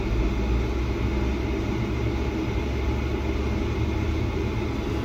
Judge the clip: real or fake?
real